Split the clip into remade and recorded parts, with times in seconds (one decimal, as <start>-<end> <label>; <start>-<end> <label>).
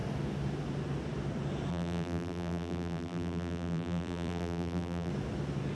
0.0-1.7 recorded; 1.7-5.1 remade; 5.1-5.7 recorded